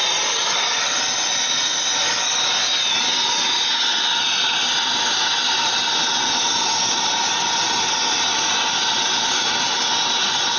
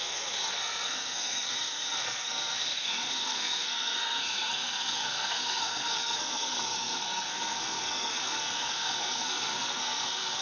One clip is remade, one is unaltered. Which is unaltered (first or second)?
first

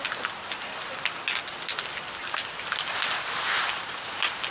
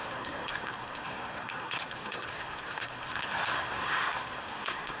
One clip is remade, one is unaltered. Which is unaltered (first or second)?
first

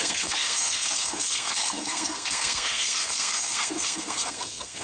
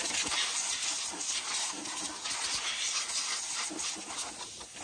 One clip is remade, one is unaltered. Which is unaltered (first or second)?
second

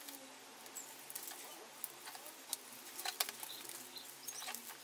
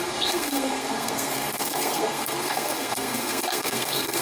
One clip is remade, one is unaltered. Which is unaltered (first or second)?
first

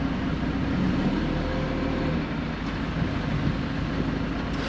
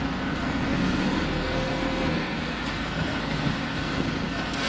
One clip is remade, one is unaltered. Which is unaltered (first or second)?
first